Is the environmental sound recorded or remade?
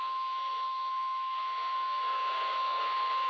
remade